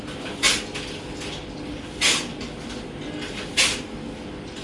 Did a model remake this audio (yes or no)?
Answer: no